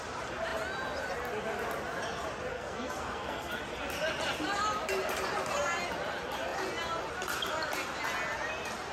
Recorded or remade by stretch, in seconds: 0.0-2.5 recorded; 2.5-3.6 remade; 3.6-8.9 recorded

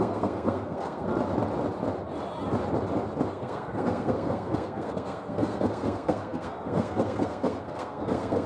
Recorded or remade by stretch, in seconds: 0.0-1.1 remade; 1.1-3.3 recorded; 3.3-8.5 remade

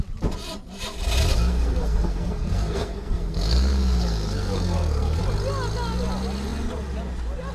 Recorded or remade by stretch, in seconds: 0.0-1.3 recorded; 1.3-5.2 remade; 5.2-7.5 recorded

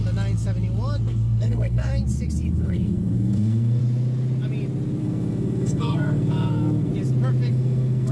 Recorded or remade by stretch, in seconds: 0.0-1.1 recorded; 1.1-1.9 remade; 1.9-2.5 recorded; 2.5-3.8 remade; 3.8-5.0 recorded; 5.0-6.9 remade; 6.9-7.5 recorded; 7.5-8.1 remade

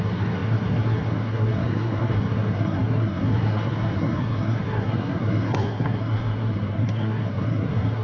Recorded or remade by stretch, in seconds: 0.0-8.0 remade

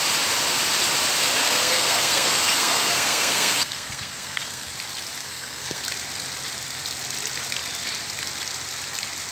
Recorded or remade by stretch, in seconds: 0.0-1.4 recorded; 1.4-4.7 remade; 4.7-5.2 recorded; 5.2-5.8 remade; 5.8-9.3 recorded

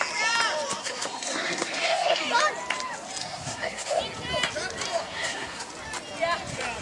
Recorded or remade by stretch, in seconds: 0.0-0.8 recorded; 0.8-2.2 remade; 2.2-3.2 recorded; 3.2-4.0 remade; 4.0-5.0 recorded; 5.0-5.7 remade; 5.7-6.8 recorded